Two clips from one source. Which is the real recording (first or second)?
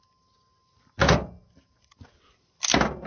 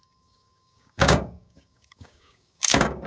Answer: first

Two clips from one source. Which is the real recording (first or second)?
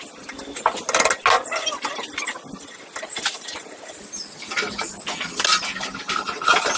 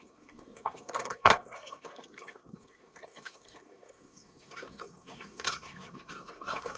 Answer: first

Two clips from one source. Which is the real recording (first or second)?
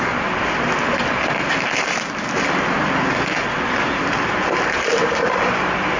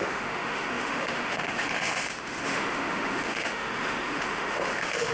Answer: first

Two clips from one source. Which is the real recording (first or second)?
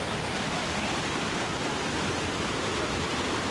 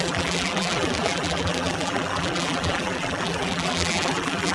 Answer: first